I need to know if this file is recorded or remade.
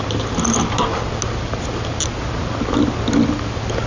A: recorded